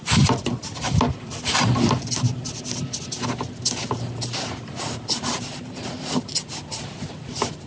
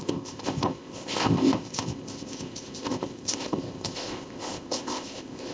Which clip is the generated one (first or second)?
second